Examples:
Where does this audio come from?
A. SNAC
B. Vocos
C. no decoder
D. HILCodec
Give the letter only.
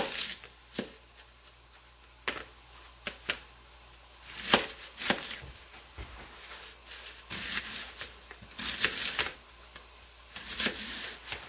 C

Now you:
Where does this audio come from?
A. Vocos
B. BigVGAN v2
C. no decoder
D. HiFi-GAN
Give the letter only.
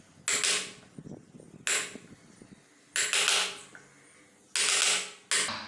C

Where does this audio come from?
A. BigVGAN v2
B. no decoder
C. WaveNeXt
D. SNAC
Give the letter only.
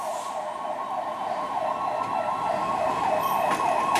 B